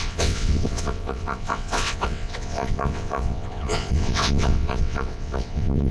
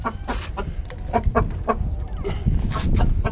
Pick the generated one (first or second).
first